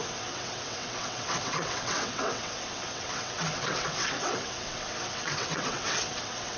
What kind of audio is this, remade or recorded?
remade